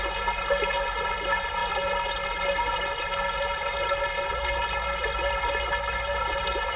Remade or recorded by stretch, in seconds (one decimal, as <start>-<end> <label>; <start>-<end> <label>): 0.0-6.8 recorded